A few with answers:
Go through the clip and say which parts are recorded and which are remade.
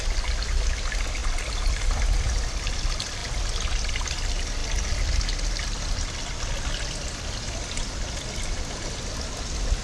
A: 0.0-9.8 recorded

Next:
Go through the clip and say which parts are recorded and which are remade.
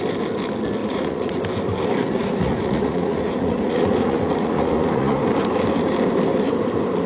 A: 0.0-0.8 recorded; 0.8-1.4 remade; 1.4-2.1 recorded; 2.1-5.2 remade; 5.2-7.1 recorded